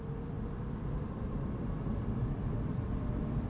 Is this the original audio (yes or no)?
yes